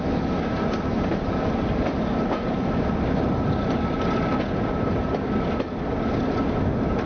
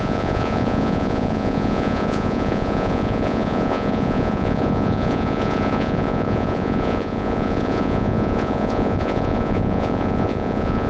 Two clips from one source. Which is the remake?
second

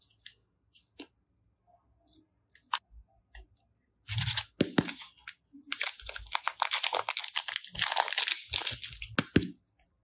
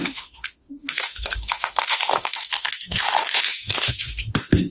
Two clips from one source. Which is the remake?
second